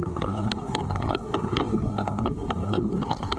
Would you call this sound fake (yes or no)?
yes